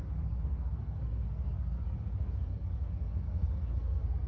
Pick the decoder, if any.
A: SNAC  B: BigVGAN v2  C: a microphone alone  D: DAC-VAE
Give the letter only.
A